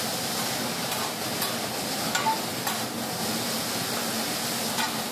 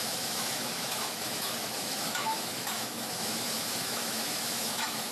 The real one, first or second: first